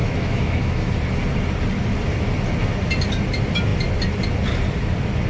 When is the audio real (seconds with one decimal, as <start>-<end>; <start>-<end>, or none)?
0.9-5.3